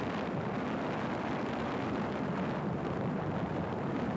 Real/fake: real